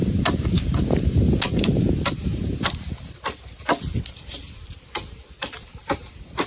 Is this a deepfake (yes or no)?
yes